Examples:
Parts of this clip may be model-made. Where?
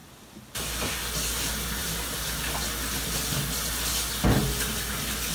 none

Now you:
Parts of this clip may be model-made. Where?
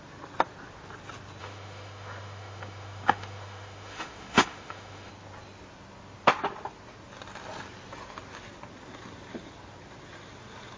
1.4-5.1 (autoencoder, DAC-VAE)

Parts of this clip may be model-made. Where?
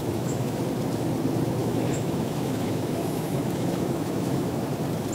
0.0-0.6 (autoencoder, DAC-VAE); 1.6-4.6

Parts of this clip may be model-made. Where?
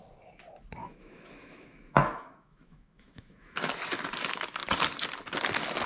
0.8-3.8 (autoencoder, DAC-VAE)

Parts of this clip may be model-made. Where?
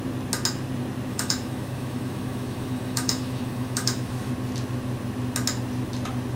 1.1-4.3 (autoencoder, DAC-VAE)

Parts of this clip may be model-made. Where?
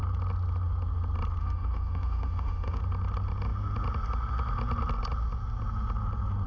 1.4-2.8 (autoencoder, DAC-VAE)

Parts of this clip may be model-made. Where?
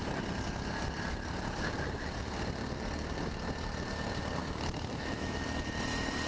4.4-5.4 (autoencoder, DAC-VAE)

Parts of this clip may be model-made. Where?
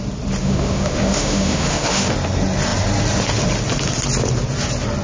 0.4-2.1 (autoencoder, DAC-VAE)